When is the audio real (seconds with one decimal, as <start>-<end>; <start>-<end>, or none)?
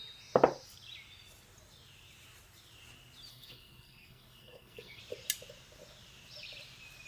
0.0-3.3; 5.0-7.1